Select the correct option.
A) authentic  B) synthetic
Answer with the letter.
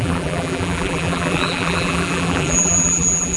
B